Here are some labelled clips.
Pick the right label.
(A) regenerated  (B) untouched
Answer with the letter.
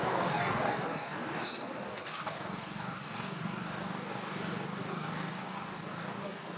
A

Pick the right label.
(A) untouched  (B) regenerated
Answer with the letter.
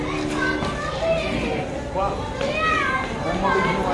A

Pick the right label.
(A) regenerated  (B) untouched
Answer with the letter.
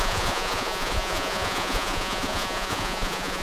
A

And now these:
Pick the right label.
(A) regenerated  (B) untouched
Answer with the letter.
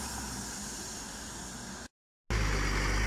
B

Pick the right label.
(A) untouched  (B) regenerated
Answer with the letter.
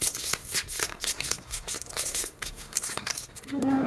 B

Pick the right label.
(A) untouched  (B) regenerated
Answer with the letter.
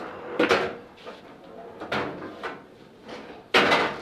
A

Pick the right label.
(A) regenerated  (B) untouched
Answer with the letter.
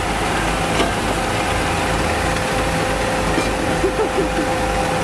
B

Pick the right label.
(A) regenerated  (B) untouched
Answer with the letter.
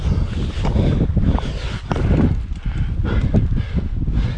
B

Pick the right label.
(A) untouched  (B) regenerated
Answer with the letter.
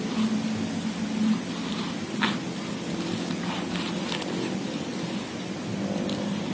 A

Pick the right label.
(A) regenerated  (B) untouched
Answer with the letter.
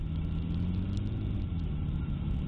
B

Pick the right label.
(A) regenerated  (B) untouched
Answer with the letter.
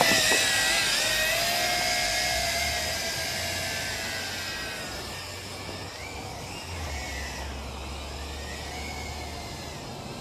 B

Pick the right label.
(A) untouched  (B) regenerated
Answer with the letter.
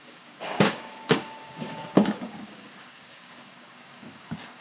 B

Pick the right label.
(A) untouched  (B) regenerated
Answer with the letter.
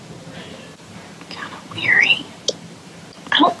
A